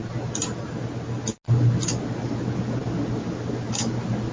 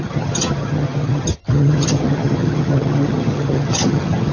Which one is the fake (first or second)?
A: second